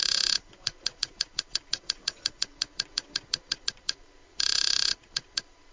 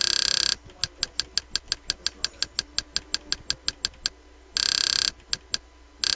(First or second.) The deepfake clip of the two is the first